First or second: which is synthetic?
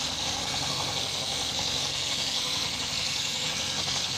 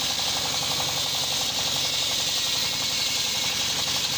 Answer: first